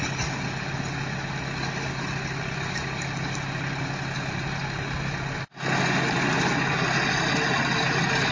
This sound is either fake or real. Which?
real